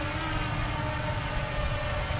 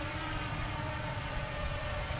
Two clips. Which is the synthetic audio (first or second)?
second